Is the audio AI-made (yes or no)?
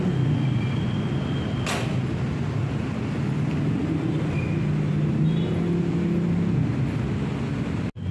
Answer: no